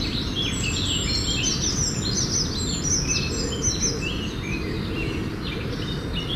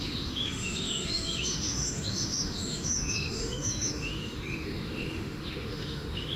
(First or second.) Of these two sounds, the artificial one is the second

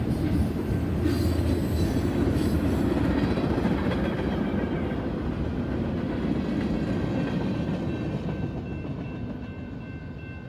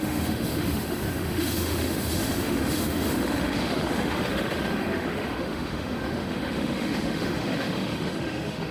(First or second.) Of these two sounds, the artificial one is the second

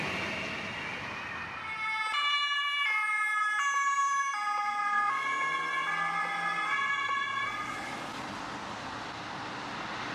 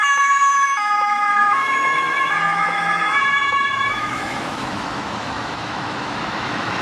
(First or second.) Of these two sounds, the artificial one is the second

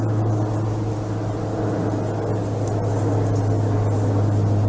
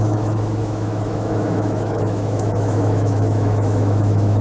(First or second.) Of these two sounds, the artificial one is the second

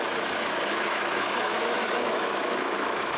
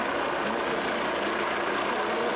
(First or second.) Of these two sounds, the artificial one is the first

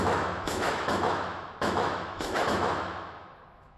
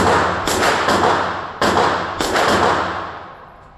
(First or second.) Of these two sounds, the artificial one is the first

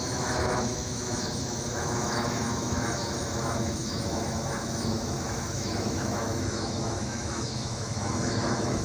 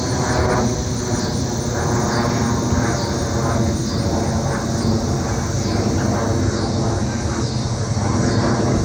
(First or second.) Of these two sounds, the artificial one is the first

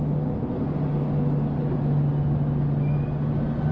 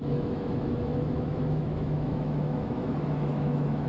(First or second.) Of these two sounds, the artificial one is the second